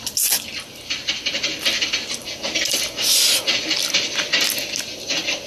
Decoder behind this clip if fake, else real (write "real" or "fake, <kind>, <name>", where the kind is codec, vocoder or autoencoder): real